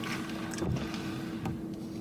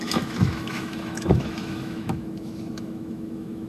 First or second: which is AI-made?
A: second